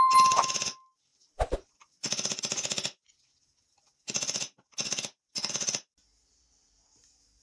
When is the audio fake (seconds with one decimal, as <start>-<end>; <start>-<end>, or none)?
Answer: none